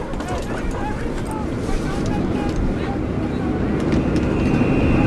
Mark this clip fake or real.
real